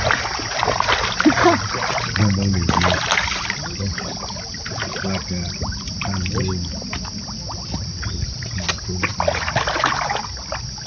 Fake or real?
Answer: real